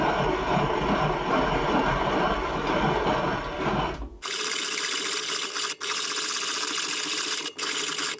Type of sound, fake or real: real